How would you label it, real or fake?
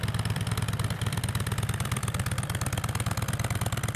fake